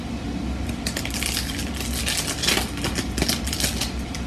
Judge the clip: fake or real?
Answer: real